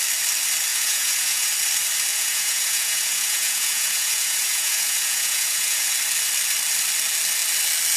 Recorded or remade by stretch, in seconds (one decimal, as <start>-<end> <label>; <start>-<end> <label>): 0.0-0.7 recorded; 0.7-1.5 remade; 1.5-2.1 recorded; 2.1-5.9 remade; 5.9-8.0 recorded